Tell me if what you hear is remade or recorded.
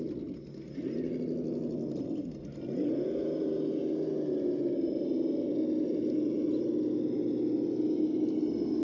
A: recorded